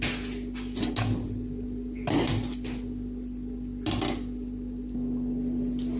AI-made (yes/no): no